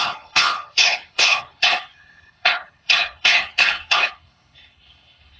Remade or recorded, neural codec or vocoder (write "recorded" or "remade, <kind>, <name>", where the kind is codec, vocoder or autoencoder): remade, codec, HILCodec